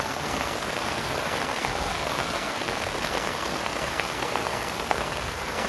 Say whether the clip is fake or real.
fake